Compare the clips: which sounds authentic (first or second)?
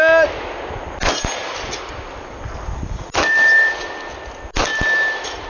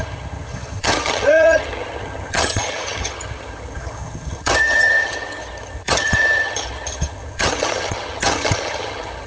first